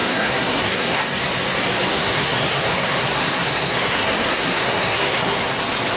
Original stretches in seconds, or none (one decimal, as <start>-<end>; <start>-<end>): 1.2-1.9; 5.5-6.0